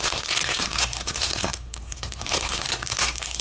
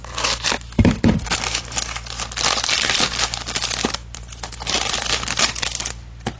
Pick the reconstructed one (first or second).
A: first